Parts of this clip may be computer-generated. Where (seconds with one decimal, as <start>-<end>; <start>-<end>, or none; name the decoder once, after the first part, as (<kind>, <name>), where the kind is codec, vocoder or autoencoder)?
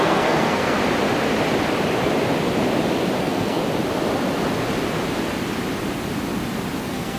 0.0-0.8 (codec, SNAC); 3.2-3.6; 6.8-7.2